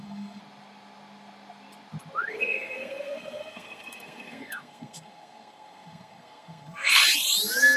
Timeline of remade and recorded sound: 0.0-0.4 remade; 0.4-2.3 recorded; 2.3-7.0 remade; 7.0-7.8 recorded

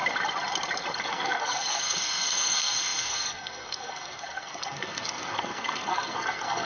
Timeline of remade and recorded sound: 0.0-1.0 recorded; 1.0-6.6 remade

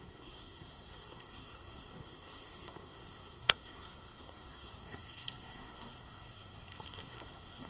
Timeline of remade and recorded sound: 0.0-7.7 remade